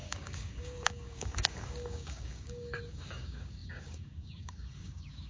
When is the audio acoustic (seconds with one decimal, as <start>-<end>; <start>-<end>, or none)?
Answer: none